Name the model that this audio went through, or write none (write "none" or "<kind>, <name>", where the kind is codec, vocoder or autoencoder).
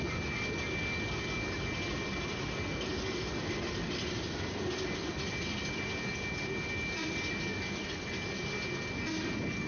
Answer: none